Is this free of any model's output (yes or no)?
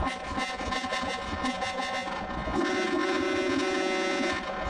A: no